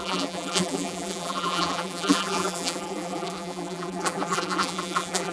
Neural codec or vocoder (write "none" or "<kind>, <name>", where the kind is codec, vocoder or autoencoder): vocoder, BigVGAN v2